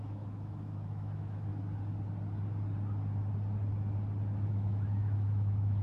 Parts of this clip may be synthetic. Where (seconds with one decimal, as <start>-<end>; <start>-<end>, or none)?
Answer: 0.0-1.5; 4.5-5.8